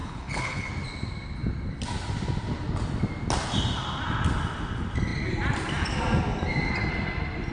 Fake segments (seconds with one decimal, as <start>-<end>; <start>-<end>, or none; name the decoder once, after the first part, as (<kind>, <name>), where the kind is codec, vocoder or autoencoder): 0.0-0.7 (codec, HILCodec)